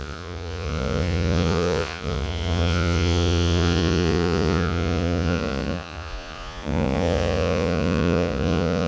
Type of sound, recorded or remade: remade